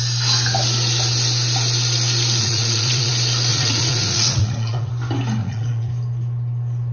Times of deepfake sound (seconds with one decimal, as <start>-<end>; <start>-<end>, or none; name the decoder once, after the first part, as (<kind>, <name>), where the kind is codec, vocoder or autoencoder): 2.4-3.1 (vocoder, Vocos); 3.5-4.9; 5.4-5.9